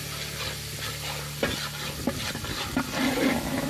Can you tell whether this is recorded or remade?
recorded